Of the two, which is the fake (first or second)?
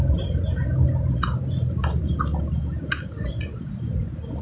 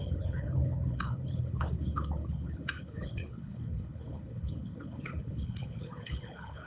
second